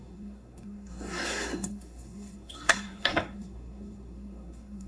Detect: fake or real fake